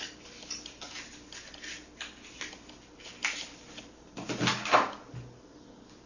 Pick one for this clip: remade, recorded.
recorded